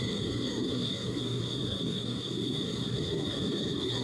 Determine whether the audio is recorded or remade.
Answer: remade